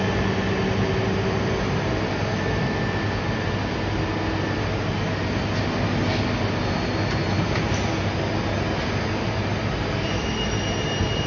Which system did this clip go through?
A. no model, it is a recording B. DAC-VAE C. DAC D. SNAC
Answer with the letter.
A